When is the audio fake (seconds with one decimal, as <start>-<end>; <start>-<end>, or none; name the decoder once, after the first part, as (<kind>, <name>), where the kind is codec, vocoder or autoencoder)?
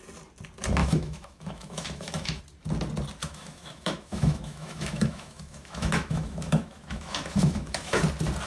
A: 0.8-2.4 (autoencoder, DAC-VAE); 3.2-8.0